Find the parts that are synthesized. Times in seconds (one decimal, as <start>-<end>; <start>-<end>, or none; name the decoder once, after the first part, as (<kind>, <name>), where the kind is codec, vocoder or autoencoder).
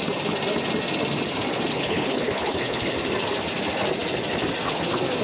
1.7-2.9 (codec, HILCodec)